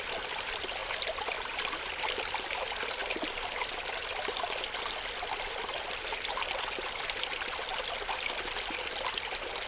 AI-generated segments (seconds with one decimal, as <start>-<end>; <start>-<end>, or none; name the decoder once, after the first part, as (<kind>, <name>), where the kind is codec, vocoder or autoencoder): none